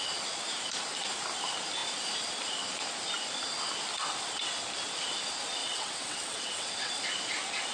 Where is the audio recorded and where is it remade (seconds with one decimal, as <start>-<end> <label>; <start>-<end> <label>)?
0.0-5.6 recorded; 5.6-7.0 remade; 7.0-7.7 recorded